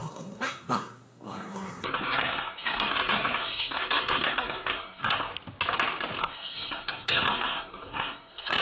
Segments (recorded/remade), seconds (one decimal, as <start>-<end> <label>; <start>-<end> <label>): 0.0-5.3 remade; 5.3-6.2 recorded; 6.2-8.6 remade